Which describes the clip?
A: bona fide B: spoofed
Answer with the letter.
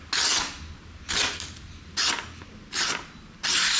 A